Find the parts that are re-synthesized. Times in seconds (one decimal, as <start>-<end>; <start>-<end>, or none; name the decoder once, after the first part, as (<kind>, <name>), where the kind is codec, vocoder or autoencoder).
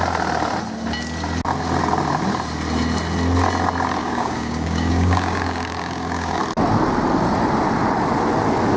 4.0-6.4 (codec, DAC)